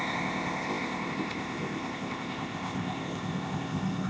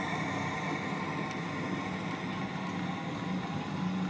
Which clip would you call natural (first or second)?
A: second